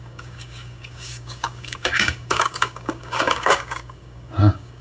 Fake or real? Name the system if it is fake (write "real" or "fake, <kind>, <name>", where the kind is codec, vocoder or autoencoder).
fake, codec, DAC